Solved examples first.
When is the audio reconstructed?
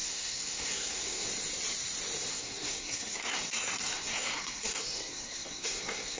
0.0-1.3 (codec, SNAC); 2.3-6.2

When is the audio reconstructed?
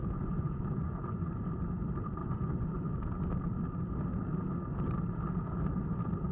0.0-1.3 (vocoder, Vocos); 2.2-2.9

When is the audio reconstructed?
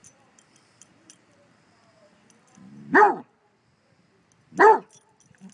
0.0-3.3 (vocoder, BigVGAN v2)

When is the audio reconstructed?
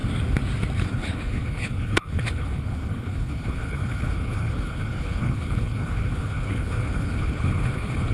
0.8-8.1 (codec, HILCodec)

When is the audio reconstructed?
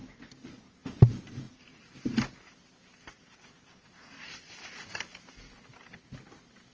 none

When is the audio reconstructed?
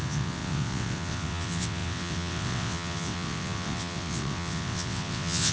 0.0-5.5 (vocoder, WaveNeXt)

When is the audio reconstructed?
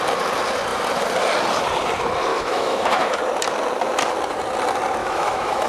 2.3-3.2 (autoencoder, DAC-VAE); 5.0-5.7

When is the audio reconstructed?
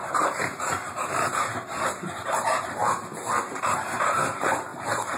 0.0-2.8 (vocoder, BigVGAN v2); 3.5-4.7